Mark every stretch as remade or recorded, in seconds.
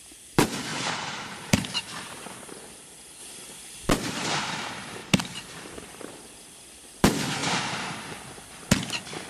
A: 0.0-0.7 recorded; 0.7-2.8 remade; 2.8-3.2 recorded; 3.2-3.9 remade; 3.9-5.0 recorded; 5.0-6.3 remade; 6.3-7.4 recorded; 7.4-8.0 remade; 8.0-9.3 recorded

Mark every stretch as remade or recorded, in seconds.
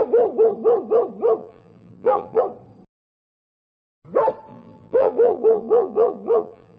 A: 0.0-1.4 recorded; 1.4-2.4 remade; 2.4-4.5 recorded; 4.5-6.8 remade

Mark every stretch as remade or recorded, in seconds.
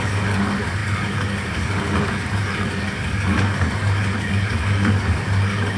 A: 0.0-5.8 remade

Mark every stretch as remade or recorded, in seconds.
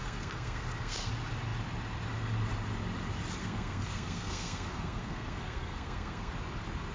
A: 0.0-1.1 remade; 1.1-3.4 recorded; 3.4-6.3 remade; 6.3-6.9 recorded